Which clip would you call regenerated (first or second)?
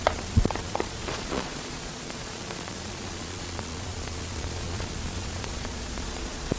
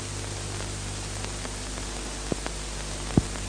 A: first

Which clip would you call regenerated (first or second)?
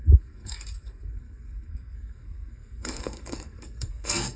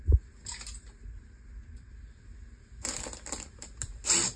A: first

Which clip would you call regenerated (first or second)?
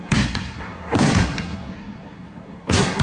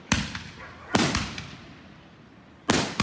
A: first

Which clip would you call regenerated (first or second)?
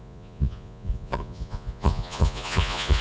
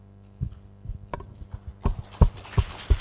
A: first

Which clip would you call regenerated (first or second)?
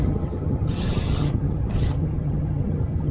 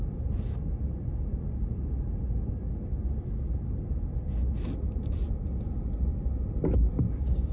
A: first